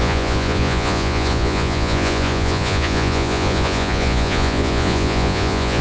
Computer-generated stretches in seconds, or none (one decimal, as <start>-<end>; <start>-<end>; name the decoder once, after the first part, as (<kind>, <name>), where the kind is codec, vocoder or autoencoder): 0.0-5.8 (vocoder, Vocos)